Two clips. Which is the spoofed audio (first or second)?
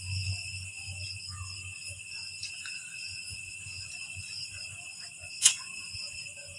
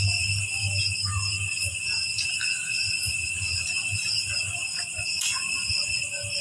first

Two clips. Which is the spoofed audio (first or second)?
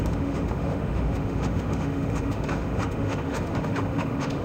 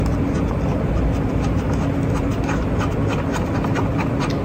first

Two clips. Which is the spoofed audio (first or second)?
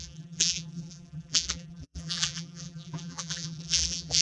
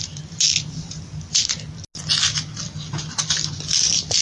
first